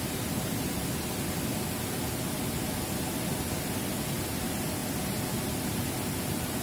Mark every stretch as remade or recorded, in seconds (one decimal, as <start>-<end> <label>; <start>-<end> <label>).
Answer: 0.0-6.6 recorded